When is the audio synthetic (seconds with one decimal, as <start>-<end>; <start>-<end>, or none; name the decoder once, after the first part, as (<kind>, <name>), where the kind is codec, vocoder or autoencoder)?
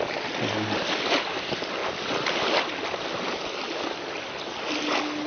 none